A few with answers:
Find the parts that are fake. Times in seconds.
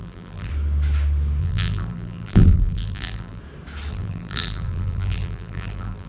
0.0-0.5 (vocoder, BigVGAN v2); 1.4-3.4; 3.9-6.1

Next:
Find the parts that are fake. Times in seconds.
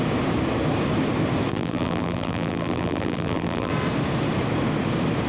1.5-3.7 (vocoder, BigVGAN v2)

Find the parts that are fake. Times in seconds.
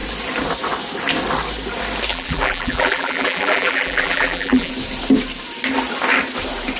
2.1-4.7 (vocoder, BigVGAN v2)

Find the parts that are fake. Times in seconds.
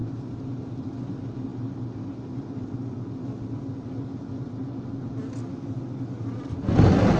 0.0-0.6 (vocoder, BigVGAN v2)